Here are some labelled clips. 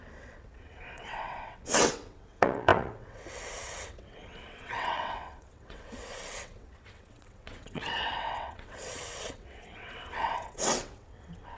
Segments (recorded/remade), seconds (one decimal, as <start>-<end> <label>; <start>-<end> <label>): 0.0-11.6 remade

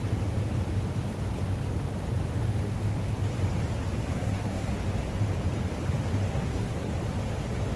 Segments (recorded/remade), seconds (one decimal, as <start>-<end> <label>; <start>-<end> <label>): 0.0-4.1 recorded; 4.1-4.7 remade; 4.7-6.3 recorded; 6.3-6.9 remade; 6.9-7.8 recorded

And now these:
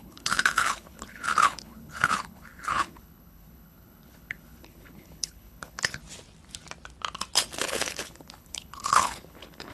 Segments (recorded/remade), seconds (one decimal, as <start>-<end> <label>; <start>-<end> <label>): 0.0-6.0 remade; 6.0-7.6 recorded; 7.6-9.7 remade

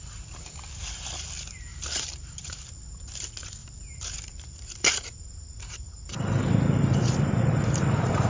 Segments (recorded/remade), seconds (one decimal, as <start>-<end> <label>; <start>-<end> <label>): 0.0-1.7 recorded; 1.7-2.8 remade; 2.8-3.6 recorded; 3.6-8.3 remade

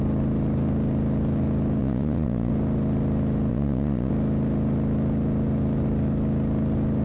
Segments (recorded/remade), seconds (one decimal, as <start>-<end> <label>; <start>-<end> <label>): 0.0-1.8 recorded; 1.8-2.5 remade; 2.5-3.5 recorded; 3.5-4.1 remade; 4.1-7.0 recorded